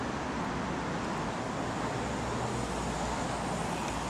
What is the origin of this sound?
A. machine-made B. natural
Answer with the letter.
B